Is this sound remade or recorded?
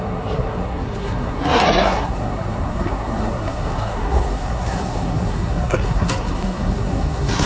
remade